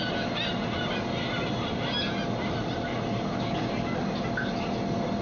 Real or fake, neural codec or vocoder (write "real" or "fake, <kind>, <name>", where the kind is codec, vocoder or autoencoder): real